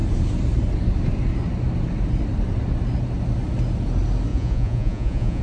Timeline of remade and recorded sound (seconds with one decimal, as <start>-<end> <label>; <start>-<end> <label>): 0.0-4.3 recorded; 4.3-5.4 remade